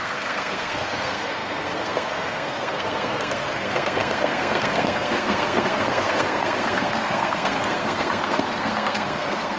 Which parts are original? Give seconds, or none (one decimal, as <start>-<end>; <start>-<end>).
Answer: none